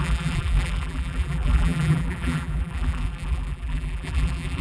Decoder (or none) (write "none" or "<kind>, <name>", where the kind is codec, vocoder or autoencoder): vocoder, BigVGAN v2